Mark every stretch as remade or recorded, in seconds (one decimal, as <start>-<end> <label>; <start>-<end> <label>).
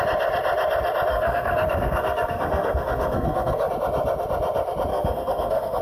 0.0-1.1 recorded; 1.1-3.7 remade; 3.7-4.9 recorded; 4.9-5.8 remade